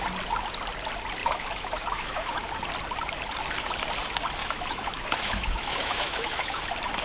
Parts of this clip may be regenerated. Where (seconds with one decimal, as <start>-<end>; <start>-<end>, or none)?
1.2-2.5; 4.4-6.6